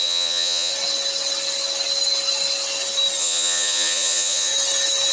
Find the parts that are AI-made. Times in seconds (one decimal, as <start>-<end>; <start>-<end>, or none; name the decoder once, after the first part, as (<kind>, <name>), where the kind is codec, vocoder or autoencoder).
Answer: 0.0-0.7 (vocoder, Vocos); 3.2-4.5

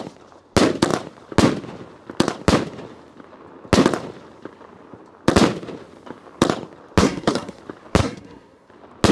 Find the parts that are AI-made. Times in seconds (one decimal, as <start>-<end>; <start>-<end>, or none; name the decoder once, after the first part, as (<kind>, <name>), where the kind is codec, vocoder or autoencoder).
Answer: 7.0-7.6 (codec, SNAC); 8.0-8.7